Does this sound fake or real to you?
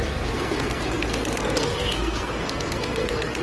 fake